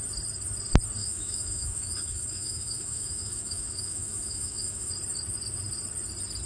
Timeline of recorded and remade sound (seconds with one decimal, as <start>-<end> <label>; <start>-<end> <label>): 0.0-1.0 recorded; 1.0-4.9 remade; 4.9-6.5 recorded